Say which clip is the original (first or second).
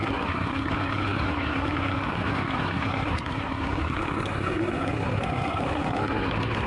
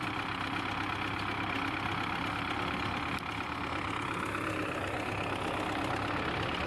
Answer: second